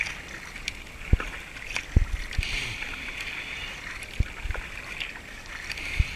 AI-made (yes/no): no